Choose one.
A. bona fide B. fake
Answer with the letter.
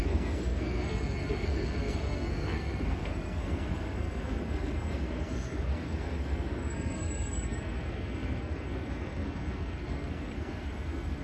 B